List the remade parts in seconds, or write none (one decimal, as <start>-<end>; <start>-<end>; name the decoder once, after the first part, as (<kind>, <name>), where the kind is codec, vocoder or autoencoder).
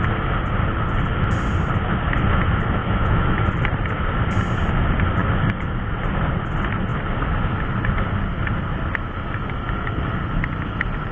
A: 2.8-3.4 (autoencoder, DAC-VAE)